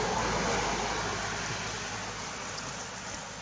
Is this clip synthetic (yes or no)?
no